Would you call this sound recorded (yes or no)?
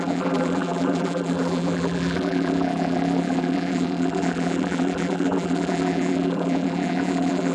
no